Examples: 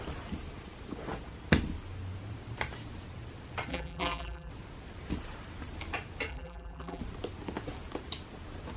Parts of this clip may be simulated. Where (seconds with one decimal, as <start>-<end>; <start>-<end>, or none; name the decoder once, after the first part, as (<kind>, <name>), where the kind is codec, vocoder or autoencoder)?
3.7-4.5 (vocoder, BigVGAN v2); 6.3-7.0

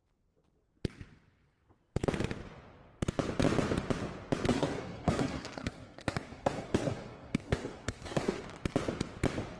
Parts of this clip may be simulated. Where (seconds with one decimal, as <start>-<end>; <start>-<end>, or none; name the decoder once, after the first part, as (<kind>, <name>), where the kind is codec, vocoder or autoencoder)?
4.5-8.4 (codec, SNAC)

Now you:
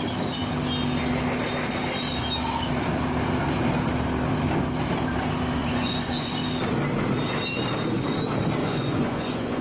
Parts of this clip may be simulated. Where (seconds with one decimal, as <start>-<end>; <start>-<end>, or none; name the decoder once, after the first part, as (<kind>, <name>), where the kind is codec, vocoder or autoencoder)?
5.6-6.3 (vocoder, Vocos); 8.6-9.6